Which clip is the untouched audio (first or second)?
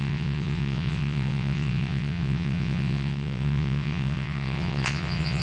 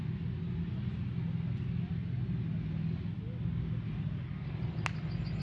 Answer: second